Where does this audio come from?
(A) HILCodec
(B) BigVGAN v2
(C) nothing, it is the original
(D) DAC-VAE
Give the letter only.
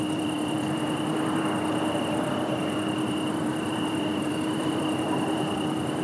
B